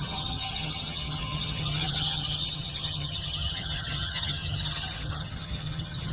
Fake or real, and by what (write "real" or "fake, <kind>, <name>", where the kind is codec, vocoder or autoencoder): fake, vocoder, HiFi-GAN